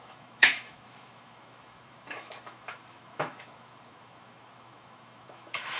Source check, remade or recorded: remade